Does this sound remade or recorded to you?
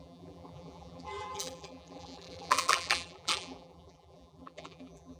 remade